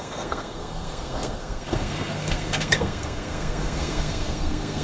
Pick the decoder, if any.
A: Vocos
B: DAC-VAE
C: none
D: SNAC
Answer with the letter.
D